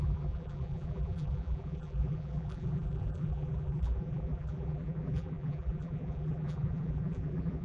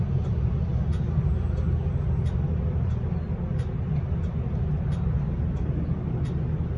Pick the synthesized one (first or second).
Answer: first